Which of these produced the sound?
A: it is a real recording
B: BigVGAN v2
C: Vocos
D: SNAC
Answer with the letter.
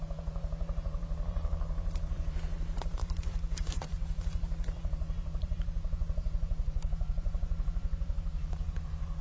B